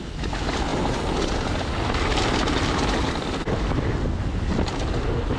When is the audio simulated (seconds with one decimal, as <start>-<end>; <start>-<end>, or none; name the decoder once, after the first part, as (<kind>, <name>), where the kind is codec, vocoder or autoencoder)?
none